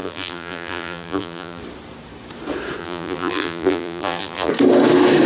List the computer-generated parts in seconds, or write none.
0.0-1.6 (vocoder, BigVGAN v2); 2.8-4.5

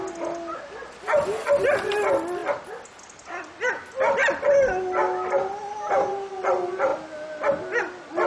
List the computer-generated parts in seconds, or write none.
none